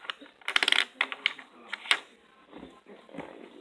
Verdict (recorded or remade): recorded